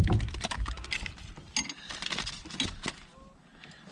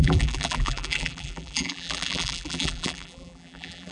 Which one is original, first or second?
first